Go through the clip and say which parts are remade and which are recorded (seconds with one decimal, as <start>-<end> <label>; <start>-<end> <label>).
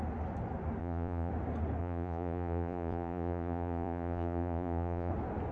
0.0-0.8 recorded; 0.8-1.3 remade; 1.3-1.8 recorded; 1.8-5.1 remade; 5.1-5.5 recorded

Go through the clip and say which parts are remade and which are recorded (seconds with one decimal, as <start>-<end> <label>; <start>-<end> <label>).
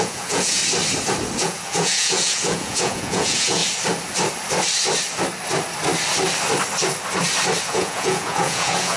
0.0-0.6 remade; 0.6-1.4 recorded; 1.4-3.6 remade; 3.6-7.7 recorded; 7.7-9.0 remade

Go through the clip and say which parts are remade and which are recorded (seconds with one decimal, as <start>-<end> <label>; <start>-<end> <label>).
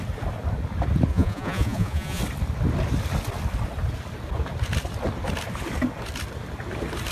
0.0-1.1 recorded; 1.1-2.2 remade; 2.2-7.1 recorded